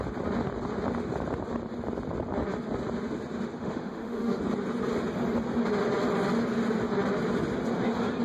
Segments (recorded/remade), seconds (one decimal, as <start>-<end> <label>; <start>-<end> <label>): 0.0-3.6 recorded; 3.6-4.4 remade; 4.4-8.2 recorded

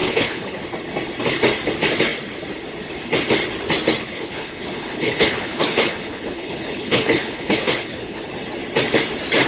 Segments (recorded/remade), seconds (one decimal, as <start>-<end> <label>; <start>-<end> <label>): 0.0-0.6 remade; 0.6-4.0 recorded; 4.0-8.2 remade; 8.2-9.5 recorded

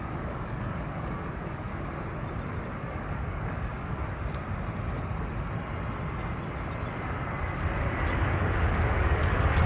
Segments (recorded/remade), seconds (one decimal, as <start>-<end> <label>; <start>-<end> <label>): 0.0-1.7 remade; 1.7-2.7 recorded; 2.7-3.7 remade; 3.7-8.1 recorded; 8.1-9.7 remade

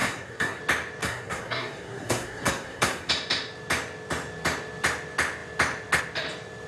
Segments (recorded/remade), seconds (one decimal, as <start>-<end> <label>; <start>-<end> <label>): 0.0-0.6 remade; 0.6-1.0 recorded; 1.0-3.1 remade; 3.1-6.7 recorded